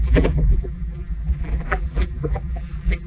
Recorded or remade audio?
remade